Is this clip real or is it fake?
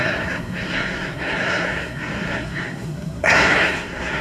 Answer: fake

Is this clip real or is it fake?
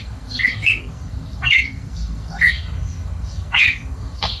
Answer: fake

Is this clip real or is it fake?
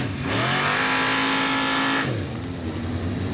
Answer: real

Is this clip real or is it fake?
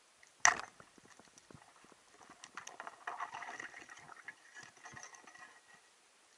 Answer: real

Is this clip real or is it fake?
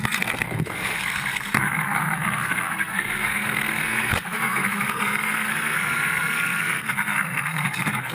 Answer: fake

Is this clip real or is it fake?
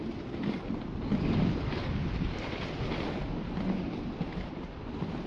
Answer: real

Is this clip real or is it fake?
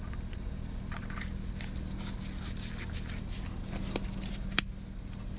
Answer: real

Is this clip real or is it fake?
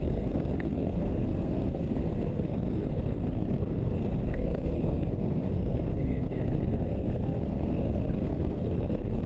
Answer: fake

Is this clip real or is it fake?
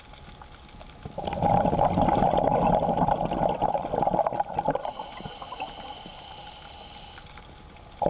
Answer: real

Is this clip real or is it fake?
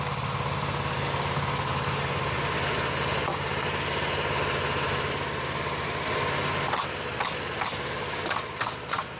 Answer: real